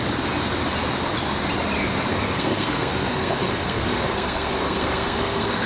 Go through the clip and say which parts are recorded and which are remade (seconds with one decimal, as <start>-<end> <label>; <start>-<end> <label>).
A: 0.0-2.1 recorded; 2.1-5.7 remade